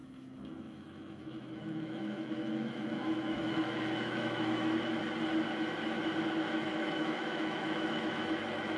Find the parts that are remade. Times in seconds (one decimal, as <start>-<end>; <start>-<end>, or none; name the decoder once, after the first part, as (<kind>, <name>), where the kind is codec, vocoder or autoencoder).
0.0-5.0 (autoencoder, DAC-VAE); 6.3-8.8